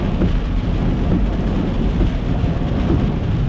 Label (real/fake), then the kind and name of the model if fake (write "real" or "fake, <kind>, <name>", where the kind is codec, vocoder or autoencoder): real